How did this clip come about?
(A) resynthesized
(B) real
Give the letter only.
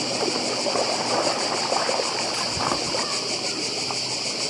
B